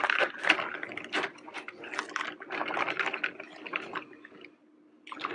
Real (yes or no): yes